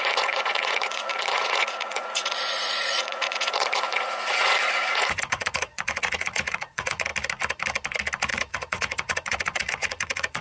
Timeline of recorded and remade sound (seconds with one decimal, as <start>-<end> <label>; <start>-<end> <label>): 0.0-7.1 remade; 7.1-8.3 recorded; 8.3-10.4 remade

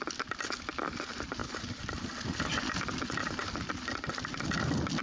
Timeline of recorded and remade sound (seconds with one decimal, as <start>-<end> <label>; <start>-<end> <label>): 0.0-1.4 recorded; 1.4-4.4 remade; 4.4-5.0 recorded

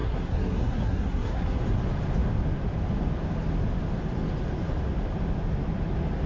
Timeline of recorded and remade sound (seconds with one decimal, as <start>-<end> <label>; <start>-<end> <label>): 0.0-1.6 remade; 1.6-6.3 recorded

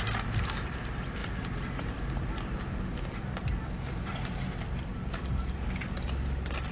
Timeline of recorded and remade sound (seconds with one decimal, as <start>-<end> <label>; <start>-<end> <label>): 0.0-6.7 recorded